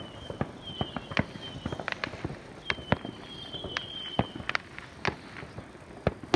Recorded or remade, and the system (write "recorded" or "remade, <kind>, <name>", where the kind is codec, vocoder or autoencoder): recorded